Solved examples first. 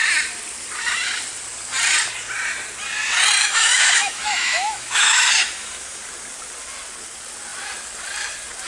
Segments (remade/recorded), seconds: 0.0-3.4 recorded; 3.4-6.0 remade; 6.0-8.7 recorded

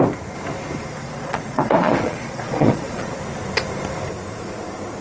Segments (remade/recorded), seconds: 0.0-1.0 recorded; 1.0-3.2 remade; 3.2-5.0 recorded

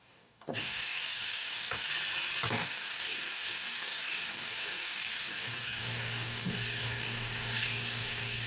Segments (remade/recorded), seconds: 0.0-1.9 remade; 1.9-2.5 recorded; 2.5-8.5 remade

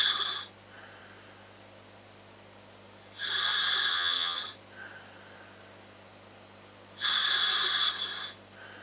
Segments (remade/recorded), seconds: 0.0-3.9 recorded; 3.9-4.4 remade; 4.4-8.8 recorded